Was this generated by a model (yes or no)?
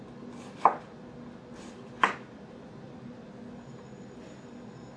no